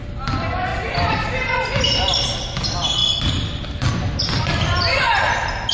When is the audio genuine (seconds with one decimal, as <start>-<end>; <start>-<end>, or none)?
0.0-5.7